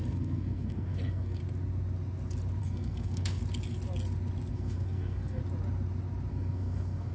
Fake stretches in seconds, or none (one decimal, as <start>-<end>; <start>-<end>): 0.0-1.4; 2.6-3.4; 4.5-5.4; 6.3-7.1